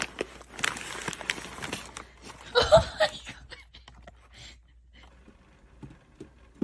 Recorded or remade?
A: recorded